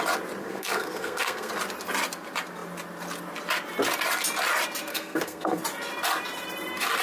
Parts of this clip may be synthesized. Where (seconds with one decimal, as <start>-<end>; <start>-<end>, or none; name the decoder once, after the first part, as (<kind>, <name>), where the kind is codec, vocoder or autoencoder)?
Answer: 0.4-1.5 (codec, SNAC); 4.9-5.6